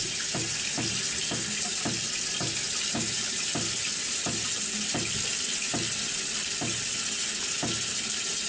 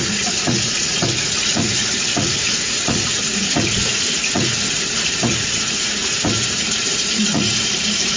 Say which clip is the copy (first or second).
second